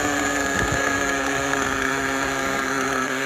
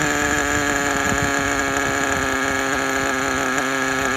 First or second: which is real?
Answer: second